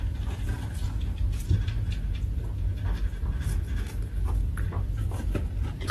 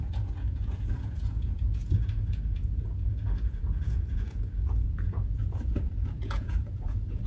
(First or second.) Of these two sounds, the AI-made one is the second